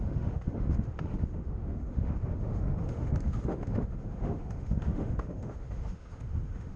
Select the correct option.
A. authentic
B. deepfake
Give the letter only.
B